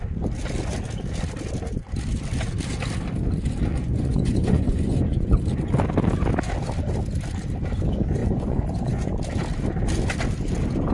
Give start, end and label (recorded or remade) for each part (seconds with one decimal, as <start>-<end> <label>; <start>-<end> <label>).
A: 0.0-3.7 recorded; 3.7-5.4 remade; 5.4-8.2 recorded; 8.2-9.1 remade; 9.1-10.9 recorded